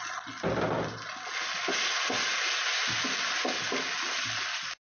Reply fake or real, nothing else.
real